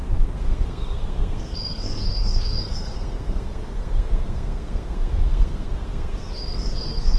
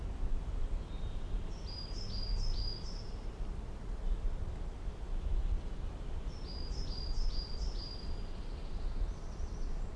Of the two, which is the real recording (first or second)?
second